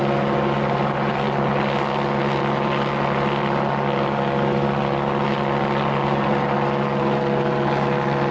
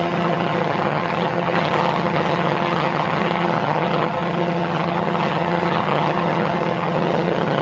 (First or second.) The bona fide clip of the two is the first